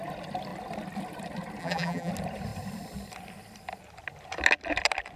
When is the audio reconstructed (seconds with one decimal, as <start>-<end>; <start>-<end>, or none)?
1.6-2.1